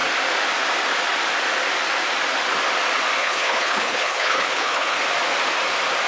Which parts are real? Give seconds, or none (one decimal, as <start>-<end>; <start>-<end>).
0.0-3.2; 5.0-6.1